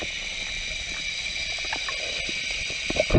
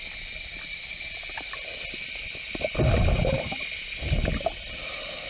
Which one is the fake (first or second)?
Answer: second